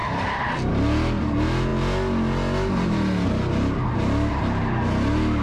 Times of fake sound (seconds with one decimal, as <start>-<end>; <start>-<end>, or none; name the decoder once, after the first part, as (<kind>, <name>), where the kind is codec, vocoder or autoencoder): 0.0-0.7 (vocoder, BigVGAN v2)